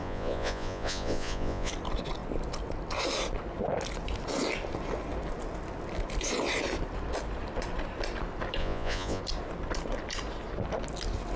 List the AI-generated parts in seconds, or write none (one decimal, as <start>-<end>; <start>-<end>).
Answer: 0.0-1.7; 8.6-9.2